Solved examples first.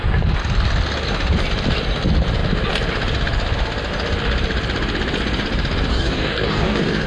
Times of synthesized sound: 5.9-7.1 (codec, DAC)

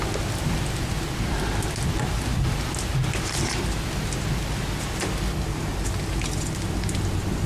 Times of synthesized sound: none

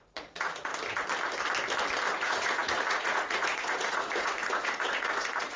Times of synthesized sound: 0.0-0.7 (vocoder, Vocos); 2.1-5.6

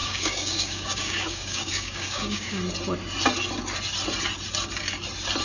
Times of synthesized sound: 0.0-2.6 (codec, DAC)

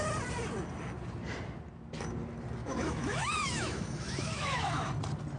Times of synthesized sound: 2.6-4.9 (autoencoder, DAC-VAE)